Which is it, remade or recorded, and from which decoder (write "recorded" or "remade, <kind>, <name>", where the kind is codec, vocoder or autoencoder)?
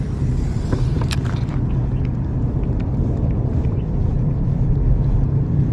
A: remade, vocoder, BigVGAN v2